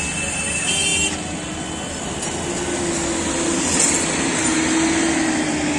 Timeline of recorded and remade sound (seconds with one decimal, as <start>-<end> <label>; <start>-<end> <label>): 0.0-5.8 recorded